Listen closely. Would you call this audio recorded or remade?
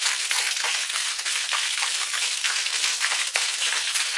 remade